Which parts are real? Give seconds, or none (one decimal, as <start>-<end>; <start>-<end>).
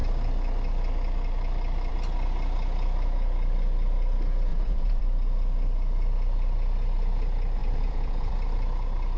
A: 0.0-4.5; 5.0-7.6; 8.3-9.2